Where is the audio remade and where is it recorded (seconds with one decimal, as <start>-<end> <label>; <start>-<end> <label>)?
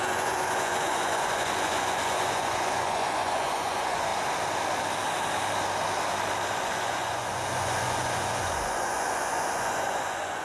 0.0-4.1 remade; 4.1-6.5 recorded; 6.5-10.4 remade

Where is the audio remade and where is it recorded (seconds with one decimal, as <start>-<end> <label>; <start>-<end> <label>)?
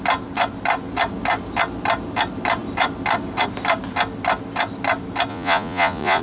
0.0-5.3 recorded; 5.3-6.2 remade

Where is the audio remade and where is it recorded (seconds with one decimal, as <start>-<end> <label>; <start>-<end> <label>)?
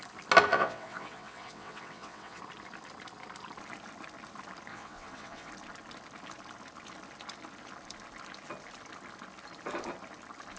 0.0-0.5 recorded; 0.5-2.4 remade; 2.4-4.7 recorded; 4.7-5.5 remade; 5.5-10.6 recorded